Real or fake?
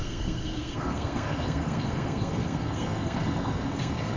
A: fake